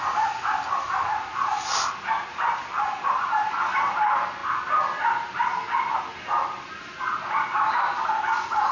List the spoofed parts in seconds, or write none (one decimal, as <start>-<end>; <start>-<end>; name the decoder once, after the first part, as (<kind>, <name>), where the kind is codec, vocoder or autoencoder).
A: none